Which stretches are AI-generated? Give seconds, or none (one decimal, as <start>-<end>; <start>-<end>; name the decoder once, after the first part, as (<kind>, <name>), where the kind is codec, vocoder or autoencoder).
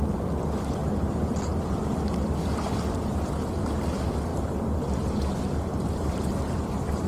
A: 4.3-7.1 (vocoder, BigVGAN v2)